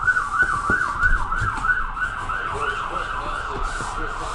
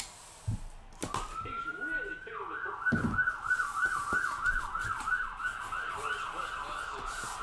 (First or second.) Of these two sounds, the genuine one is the second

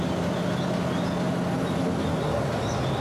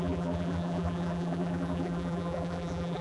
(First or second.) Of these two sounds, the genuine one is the first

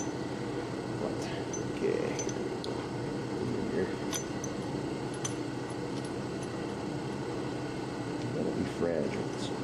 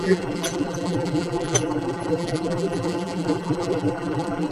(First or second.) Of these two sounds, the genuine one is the first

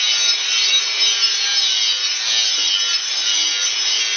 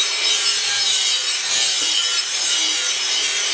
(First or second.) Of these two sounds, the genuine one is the first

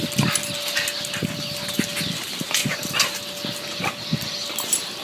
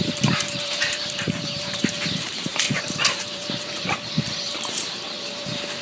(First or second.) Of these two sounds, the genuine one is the first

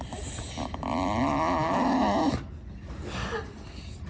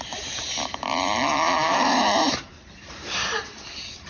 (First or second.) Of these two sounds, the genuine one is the first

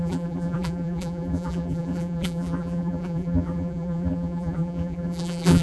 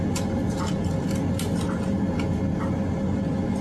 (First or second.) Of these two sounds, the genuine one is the second